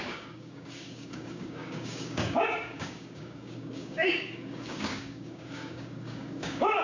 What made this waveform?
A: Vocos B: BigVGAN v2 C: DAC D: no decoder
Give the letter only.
C